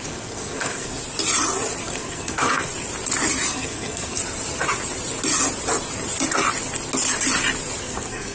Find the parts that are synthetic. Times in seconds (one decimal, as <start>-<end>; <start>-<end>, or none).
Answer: 0.0-1.0; 1.8-2.7; 3.5-4.2; 7.8-8.3